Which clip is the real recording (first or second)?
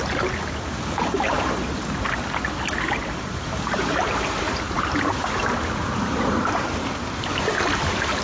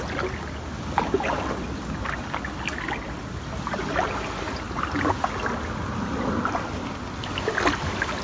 second